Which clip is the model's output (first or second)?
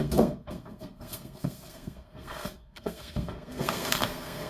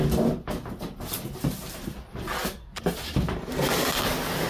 first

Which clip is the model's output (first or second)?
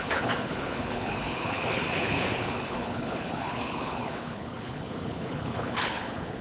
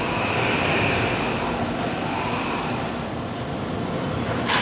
first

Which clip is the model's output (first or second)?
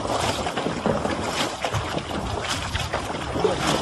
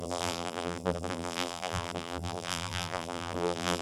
second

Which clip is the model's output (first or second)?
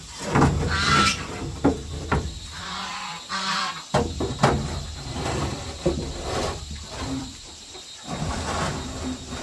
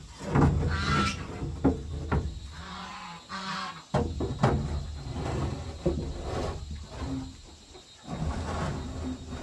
first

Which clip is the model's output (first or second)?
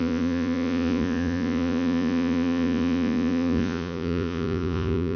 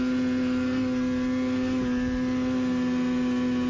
first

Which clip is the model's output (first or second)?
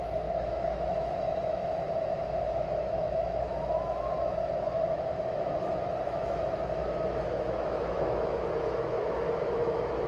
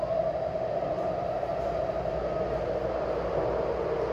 first